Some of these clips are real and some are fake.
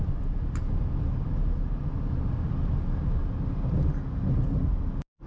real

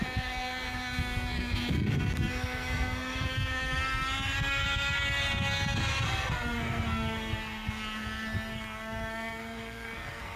fake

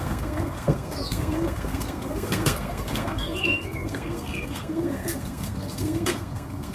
fake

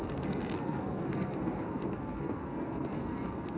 fake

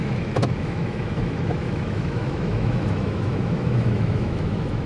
fake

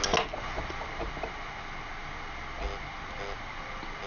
real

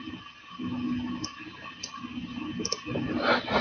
real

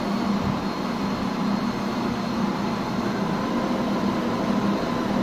real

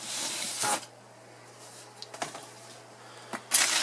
real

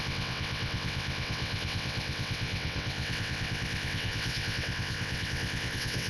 fake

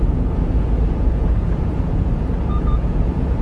fake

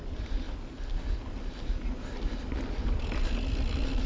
real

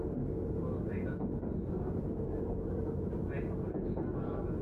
real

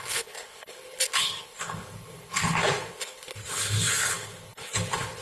fake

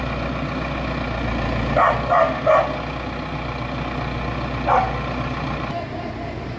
real